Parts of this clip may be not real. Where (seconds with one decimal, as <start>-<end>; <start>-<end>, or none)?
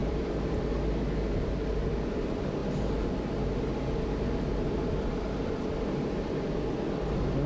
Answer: 0.0-0.6